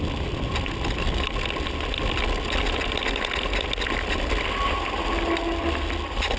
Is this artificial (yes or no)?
no